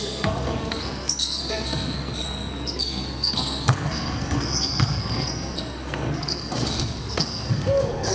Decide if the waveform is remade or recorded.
remade